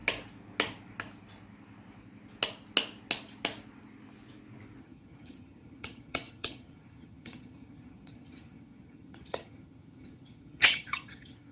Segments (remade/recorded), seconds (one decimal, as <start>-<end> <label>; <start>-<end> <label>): 0.0-4.8 recorded; 4.8-11.5 remade